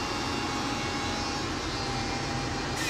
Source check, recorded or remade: remade